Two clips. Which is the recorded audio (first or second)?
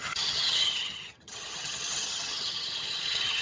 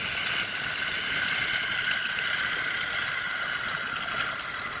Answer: second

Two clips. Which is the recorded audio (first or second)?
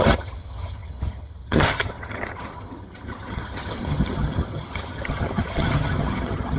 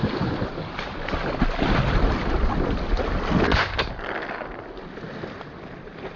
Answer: second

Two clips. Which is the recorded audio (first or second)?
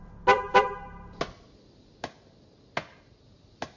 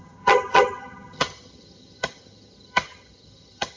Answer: first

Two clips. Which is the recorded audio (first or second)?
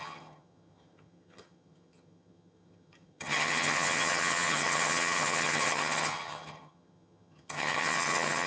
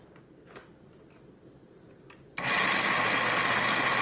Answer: second